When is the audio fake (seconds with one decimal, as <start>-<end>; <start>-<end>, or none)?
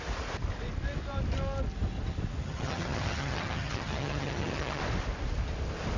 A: 2.4-4.8